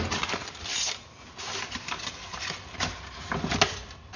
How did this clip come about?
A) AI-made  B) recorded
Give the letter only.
B